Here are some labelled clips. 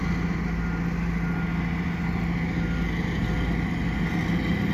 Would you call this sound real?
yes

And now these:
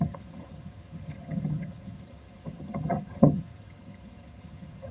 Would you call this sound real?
no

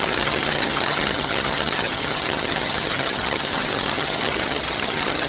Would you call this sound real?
no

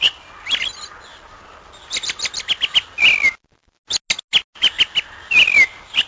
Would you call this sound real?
yes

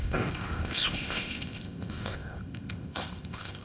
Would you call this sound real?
no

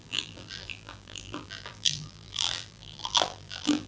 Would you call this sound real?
no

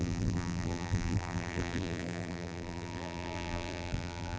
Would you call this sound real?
no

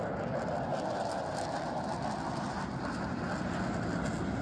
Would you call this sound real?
yes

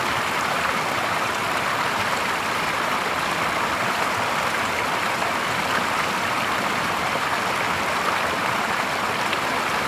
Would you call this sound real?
yes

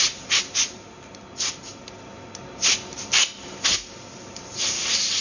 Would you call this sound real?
yes